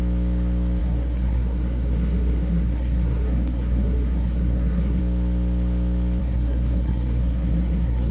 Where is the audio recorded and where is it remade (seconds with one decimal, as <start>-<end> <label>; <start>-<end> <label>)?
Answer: 0.0-0.8 recorded; 0.8-5.0 remade; 5.0-6.2 recorded; 6.2-8.1 remade